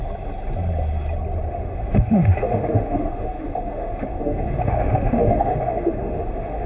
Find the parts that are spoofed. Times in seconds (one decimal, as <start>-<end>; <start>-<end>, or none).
1.5-6.7